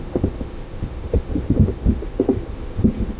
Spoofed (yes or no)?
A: yes